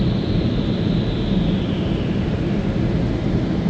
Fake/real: real